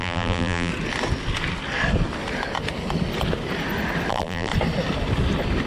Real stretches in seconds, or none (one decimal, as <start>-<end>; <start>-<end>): 0.7-4.1; 4.5-5.7